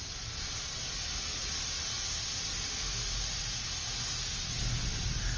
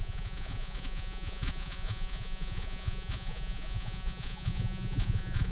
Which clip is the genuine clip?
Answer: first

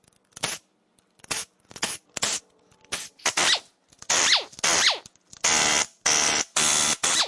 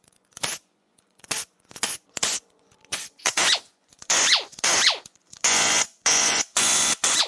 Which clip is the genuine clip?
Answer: first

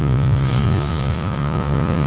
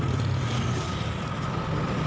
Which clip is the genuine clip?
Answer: second